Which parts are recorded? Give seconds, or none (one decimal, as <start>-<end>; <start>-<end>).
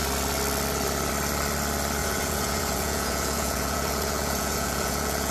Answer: 0.0-2.0